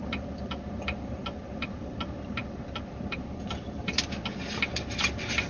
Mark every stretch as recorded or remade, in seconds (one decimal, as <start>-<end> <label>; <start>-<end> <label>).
0.0-5.5 recorded